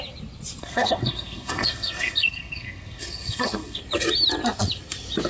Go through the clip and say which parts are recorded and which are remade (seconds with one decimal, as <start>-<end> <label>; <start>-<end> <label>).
0.0-0.6 recorded; 0.6-3.8 remade; 3.8-5.3 recorded